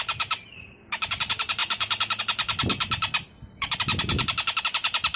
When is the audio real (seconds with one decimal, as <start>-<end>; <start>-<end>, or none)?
0.0-5.2

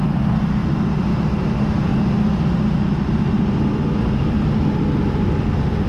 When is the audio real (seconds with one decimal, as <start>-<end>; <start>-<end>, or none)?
0.0-5.9

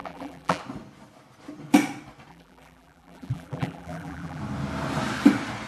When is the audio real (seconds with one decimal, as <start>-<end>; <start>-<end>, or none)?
0.6-2.3; 4.4-5.7

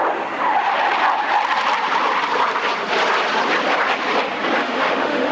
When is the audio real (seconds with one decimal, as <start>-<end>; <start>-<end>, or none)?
0.0-4.6